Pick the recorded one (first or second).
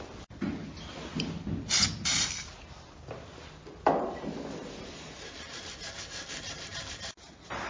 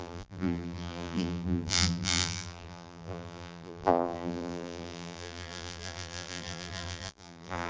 first